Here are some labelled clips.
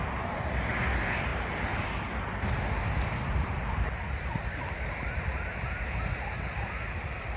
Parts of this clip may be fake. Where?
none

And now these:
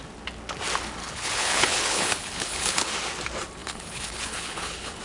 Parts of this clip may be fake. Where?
1.0-2.9 (codec, HILCodec); 3.6-5.0

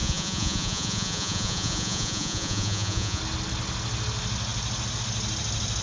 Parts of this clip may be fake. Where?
0.0-3.2 (vocoder, Vocos)

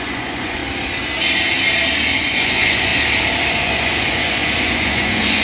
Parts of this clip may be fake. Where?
0.0-0.6 (vocoder, Vocos); 2.1-2.9; 3.5-5.4

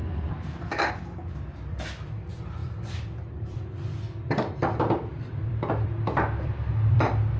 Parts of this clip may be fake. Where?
2.6-7.0 (vocoder, BigVGAN v2)